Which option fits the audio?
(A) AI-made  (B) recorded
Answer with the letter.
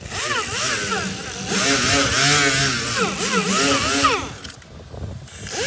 B